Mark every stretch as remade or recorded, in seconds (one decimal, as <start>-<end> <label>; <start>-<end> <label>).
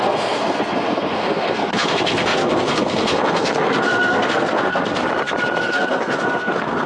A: 0.0-5.0 remade; 5.0-5.6 recorded; 5.6-6.9 remade